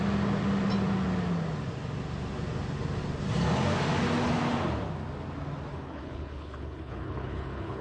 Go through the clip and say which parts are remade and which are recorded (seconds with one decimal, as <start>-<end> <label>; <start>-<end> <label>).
0.0-5.7 recorded; 5.7-7.8 remade